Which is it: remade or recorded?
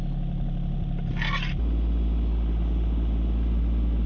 recorded